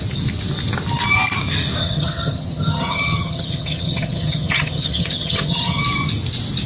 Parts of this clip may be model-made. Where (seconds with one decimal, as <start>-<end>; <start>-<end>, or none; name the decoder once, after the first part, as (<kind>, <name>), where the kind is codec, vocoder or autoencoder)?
1.8-5.8 (vocoder, HiFi-GAN)